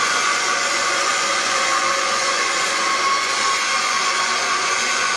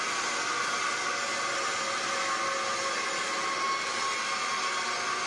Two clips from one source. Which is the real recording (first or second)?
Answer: second